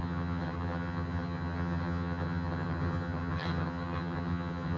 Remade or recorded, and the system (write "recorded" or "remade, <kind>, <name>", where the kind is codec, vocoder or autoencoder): remade, vocoder, HiFi-GAN